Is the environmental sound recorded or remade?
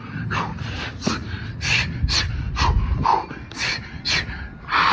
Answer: recorded